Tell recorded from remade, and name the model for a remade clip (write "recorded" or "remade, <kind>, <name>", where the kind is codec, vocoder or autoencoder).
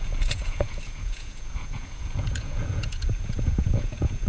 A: remade, vocoder, Vocos